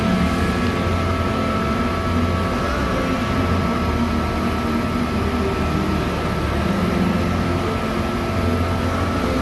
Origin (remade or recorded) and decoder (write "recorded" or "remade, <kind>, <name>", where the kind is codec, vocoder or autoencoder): recorded